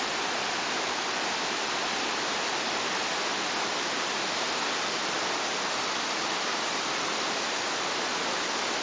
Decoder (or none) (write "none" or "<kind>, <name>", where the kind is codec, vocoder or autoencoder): none